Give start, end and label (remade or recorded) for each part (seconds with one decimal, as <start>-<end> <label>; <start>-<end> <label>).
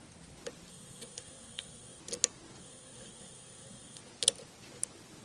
0.0-0.7 recorded; 0.7-2.0 remade; 2.0-2.6 recorded; 2.6-4.0 remade; 4.0-5.2 recorded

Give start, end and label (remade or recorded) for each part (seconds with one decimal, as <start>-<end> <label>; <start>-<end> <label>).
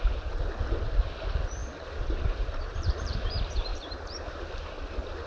0.0-1.6 recorded; 1.6-3.3 remade; 3.3-3.7 recorded; 3.7-4.4 remade; 4.4-5.3 recorded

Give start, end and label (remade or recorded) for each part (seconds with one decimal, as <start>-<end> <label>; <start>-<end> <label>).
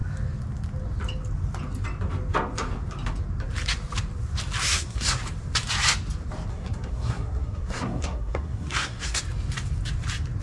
0.0-4.6 recorded; 4.6-5.2 remade; 5.2-6.5 recorded; 6.5-9.2 remade; 9.2-10.4 recorded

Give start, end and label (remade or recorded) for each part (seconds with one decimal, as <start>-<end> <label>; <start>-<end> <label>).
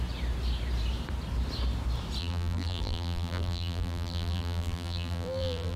0.0-2.2 recorded; 2.2-5.8 remade